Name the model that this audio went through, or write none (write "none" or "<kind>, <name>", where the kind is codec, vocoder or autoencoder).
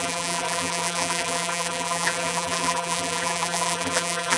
vocoder, BigVGAN v2